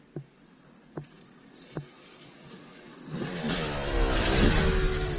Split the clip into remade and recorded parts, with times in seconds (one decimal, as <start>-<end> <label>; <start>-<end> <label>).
0.0-0.8 recorded; 0.8-3.3 remade; 3.3-5.2 recorded